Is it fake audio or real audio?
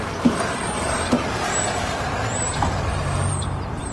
fake